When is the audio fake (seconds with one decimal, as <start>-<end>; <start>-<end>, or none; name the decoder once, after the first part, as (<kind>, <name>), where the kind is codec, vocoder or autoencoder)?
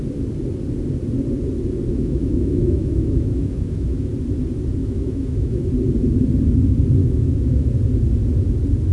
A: 1.9-4.1 (autoencoder, DAC-VAE); 4.8-5.7; 7.0-7.7